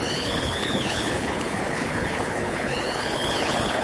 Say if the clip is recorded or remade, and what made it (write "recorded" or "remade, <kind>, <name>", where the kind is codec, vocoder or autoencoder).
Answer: remade, codec, HILCodec